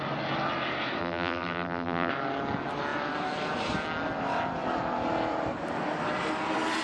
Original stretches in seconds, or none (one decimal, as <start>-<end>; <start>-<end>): 0.0-1.0; 2.1-6.8